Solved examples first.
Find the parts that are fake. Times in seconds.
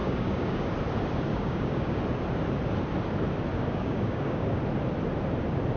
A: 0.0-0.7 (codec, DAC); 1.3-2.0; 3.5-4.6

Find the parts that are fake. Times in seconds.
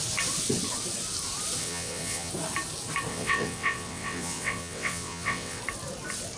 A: 1.6-2.3 (vocoder, WaveNeXt); 3.1-5.6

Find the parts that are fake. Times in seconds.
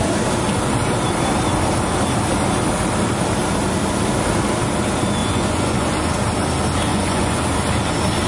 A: 5.2-6.1 (vocoder, Vocos); 6.9-7.4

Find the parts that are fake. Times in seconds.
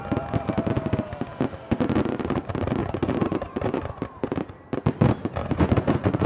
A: 2.8-4.0 (vocoder, Vocos); 5.4-6.3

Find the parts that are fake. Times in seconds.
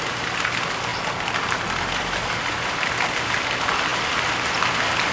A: none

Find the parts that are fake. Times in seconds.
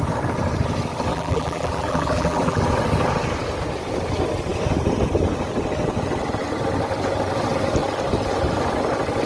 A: 1.1-2.6 (vocoder, BigVGAN v2)